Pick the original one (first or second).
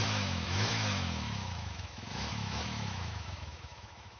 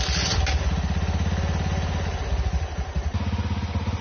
second